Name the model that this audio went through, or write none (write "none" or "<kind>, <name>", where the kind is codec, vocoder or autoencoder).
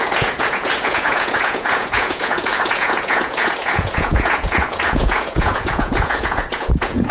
vocoder, Vocos